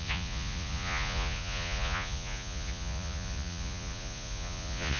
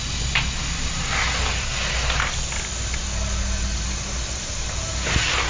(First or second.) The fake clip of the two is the first